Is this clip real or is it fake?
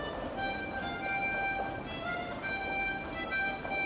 real